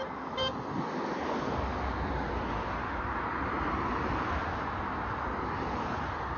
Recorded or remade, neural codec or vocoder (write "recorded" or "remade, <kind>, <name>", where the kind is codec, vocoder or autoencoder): recorded